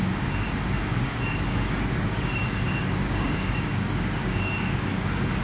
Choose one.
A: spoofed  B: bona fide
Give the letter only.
A